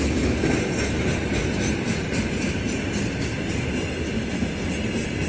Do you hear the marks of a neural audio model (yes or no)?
no